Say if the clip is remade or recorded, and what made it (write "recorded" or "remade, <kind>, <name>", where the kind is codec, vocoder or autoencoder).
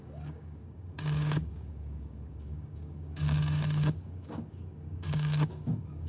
remade, codec, DAC